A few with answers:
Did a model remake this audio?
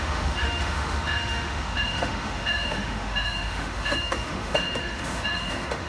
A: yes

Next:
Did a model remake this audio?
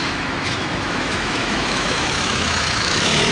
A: yes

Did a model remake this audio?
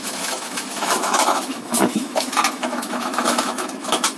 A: yes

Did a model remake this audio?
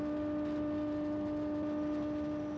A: no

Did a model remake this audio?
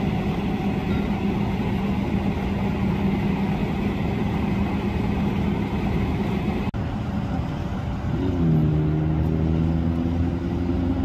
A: no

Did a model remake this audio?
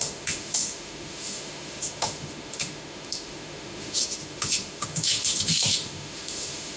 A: yes